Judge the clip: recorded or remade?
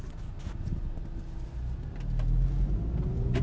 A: recorded